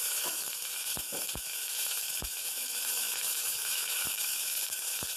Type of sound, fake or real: fake